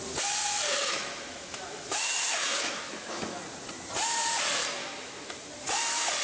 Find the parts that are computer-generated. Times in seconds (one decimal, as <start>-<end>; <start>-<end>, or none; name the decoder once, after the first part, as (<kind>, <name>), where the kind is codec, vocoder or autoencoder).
0.7-3.4 (autoencoder, DAC-VAE); 4.8-5.5